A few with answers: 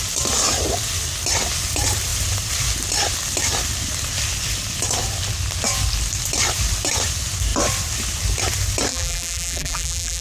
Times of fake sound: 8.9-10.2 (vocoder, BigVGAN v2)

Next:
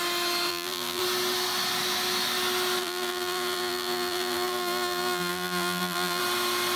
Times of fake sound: 0.5-1.0 (vocoder, BigVGAN v2); 2.8-6.2

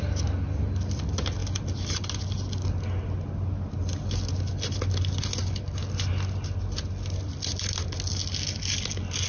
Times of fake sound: none

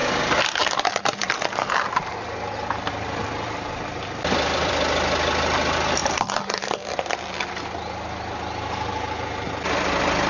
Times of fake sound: 0.0-4.7 (vocoder, BigVGAN v2); 6.0-7.0

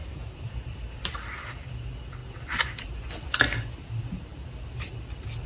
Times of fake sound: 0.0-0.5 (vocoder, BigVGAN v2); 2.2-3.3

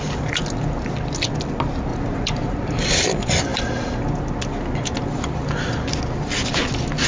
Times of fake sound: 1.9-2.9 (vocoder, BigVGAN v2)

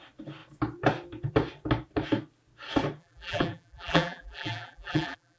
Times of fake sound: 3.0-5.4 (vocoder, BigVGAN v2)